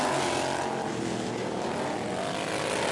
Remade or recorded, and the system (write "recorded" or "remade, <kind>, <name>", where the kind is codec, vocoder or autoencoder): recorded